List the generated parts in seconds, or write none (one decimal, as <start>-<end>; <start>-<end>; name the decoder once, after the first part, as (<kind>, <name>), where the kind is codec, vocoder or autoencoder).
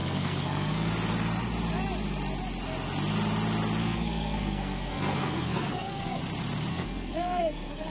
0.0-0.9 (codec, SNAC); 3.8-6.2; 6.7-7.9